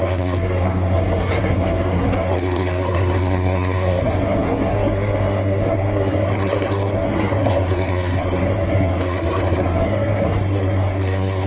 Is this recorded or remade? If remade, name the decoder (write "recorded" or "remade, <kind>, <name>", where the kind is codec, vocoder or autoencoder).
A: remade, codec, SNAC